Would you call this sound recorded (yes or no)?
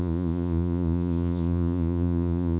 no